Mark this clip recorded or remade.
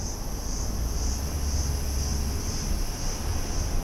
recorded